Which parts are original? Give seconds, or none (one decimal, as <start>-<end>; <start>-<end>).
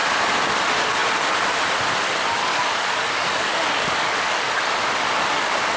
0.0-2.4; 4.5-5.8